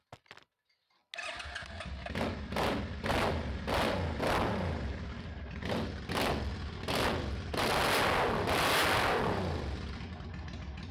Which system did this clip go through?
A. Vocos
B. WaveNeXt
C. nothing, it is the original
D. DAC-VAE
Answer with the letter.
C